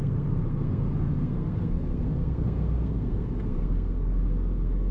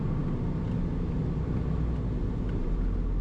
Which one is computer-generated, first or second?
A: first